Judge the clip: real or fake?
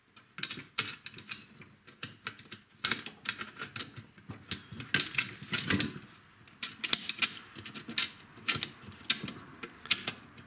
real